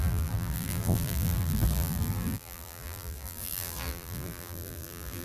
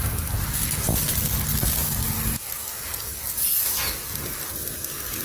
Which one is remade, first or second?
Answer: first